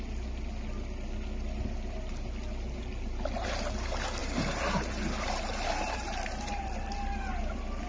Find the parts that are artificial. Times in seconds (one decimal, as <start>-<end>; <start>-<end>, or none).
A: none